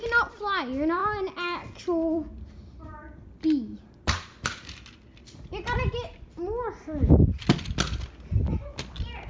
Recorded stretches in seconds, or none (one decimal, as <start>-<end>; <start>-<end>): 0.0-9.3